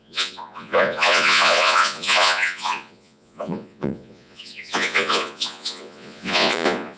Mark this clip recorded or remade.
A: remade